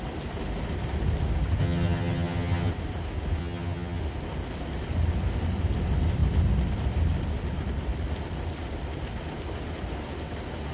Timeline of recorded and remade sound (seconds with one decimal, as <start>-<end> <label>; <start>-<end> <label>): 0.0-1.6 recorded; 1.6-2.7 remade; 2.7-3.4 recorded; 3.4-4.0 remade; 4.0-10.7 recorded

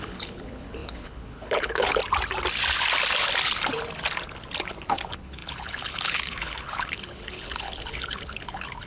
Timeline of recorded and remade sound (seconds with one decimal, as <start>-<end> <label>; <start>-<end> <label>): 0.0-2.0 remade; 2.0-4.9 recorded; 4.9-8.9 remade

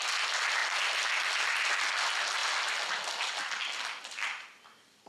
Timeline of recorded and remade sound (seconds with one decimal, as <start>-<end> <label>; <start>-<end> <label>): 0.0-5.1 recorded

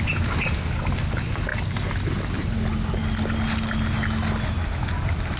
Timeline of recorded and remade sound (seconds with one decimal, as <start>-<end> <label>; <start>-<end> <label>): 0.0-5.4 recorded

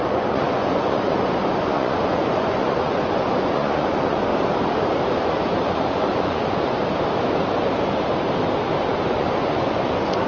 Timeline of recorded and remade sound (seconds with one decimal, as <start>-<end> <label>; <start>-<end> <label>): 0.0-4.3 remade; 4.3-5.2 recorded; 5.2-6.8 remade; 6.8-9.1 recorded; 9.1-10.3 remade

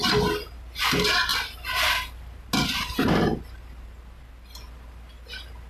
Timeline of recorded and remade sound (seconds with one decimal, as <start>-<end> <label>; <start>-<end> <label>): 0.0-5.7 recorded

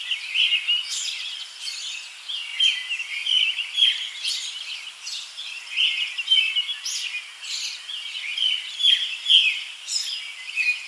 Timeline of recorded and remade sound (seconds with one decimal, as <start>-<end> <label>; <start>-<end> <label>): 0.0-10.9 recorded

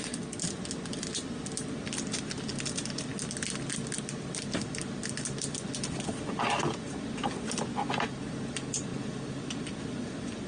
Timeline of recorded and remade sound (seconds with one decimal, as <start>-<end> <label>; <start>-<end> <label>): 0.0-10.5 recorded